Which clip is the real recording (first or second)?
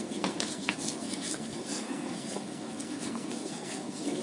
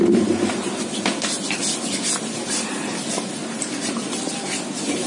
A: second